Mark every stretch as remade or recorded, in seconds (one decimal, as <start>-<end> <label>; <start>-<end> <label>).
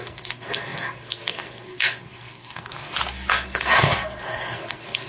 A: 0.0-5.1 remade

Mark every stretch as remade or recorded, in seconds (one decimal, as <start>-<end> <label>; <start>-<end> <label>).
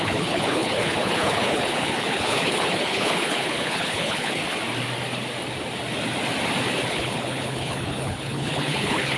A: 0.0-4.4 remade; 4.4-6.9 recorded; 6.9-9.2 remade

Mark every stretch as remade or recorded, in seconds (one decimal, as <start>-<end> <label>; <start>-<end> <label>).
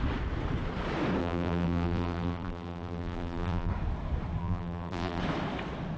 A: 0.0-1.2 recorded; 1.2-3.7 remade; 3.7-4.4 recorded; 4.4-5.2 remade; 5.2-6.0 recorded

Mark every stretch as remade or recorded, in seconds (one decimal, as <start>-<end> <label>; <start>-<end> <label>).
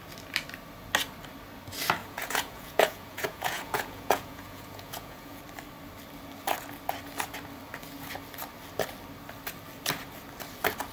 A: 0.0-2.0 recorded; 2.0-5.4 remade; 5.4-10.9 recorded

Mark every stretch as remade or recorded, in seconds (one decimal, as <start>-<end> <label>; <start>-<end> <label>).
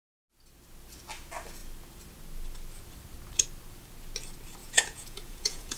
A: 0.0-4.6 recorded; 4.6-5.8 remade